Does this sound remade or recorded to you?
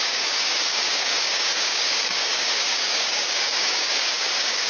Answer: remade